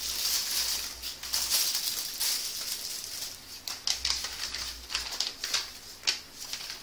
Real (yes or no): yes